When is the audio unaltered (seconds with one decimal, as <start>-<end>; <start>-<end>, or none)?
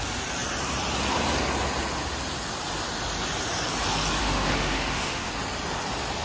0.0-4.2; 5.3-6.2